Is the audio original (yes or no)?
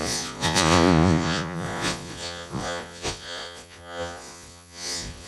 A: no